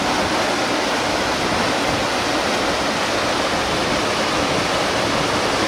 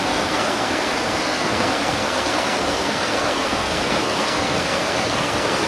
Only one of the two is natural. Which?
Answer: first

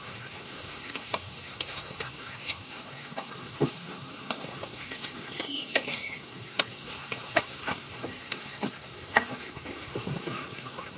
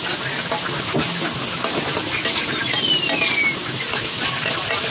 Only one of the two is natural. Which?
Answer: second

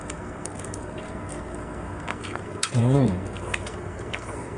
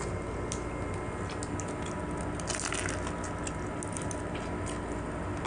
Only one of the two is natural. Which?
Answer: second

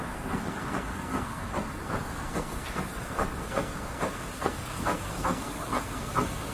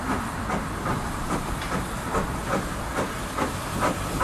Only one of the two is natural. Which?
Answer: second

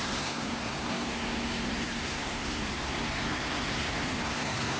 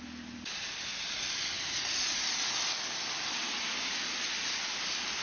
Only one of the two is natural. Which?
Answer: second